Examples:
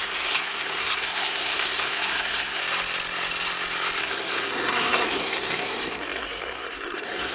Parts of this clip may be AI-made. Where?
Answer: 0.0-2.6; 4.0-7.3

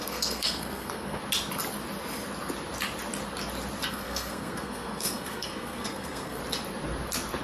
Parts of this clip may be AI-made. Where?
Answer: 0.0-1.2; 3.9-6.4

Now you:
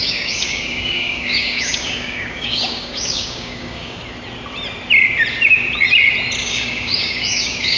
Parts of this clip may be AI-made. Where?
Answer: 0.0-4.0; 6.4-7.8